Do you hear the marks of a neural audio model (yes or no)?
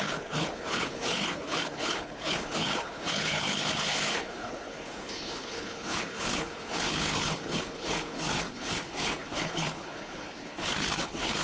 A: yes